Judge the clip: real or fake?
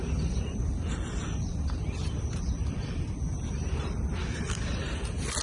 real